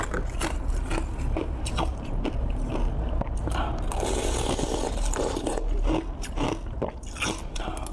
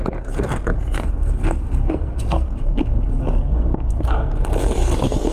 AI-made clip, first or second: second